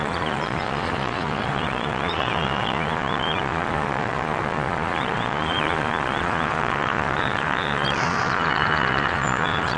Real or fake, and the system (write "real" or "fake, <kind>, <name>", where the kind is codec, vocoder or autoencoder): fake, vocoder, Vocos